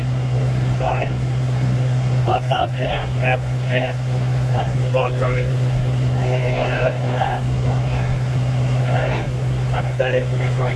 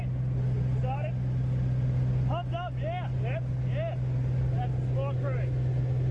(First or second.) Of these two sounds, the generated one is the first